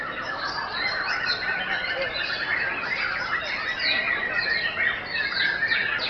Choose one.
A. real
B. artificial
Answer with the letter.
A